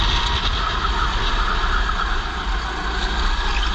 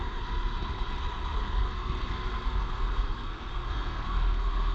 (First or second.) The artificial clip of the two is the second